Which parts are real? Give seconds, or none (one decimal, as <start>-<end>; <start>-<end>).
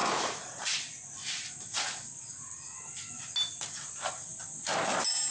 0.0-5.3